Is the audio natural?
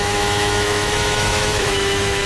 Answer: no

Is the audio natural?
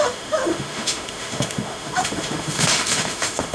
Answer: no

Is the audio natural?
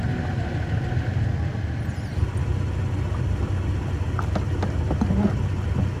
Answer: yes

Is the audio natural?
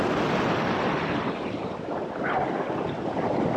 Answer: yes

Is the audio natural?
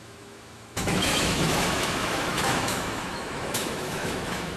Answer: no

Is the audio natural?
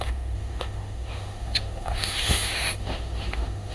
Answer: no